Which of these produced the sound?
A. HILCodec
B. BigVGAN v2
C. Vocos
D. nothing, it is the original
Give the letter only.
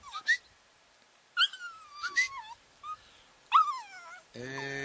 D